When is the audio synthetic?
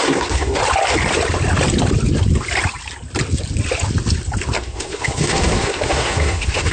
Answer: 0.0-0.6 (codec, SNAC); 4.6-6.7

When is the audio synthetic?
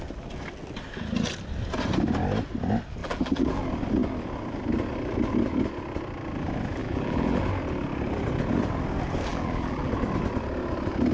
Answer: 3.0-3.6 (vocoder, BigVGAN v2); 6.8-7.4; 9.3-9.9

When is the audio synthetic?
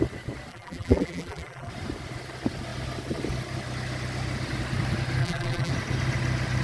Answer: 0.5-1.7 (vocoder, BigVGAN v2); 5.2-5.7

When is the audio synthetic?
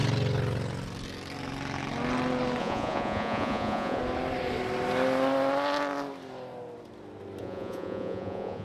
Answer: 2.6-4.0 (vocoder, Vocos); 7.4-8.6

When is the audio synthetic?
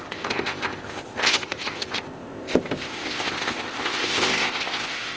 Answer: 0.0-5.2 (codec, ZipCodec)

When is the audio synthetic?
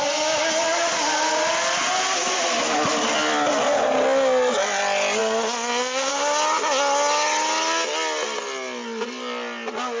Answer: none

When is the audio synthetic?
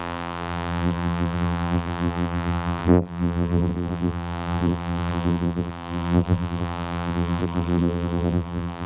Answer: 0.0-8.9 (vocoder, BigVGAN v2)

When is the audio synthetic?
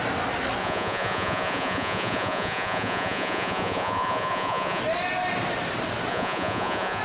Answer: 0.6-4.8 (vocoder, Vocos); 6.1-7.0